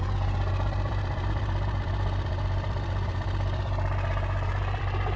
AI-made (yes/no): yes